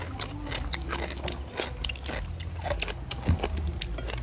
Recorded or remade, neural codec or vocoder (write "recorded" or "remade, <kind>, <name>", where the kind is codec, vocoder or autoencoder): recorded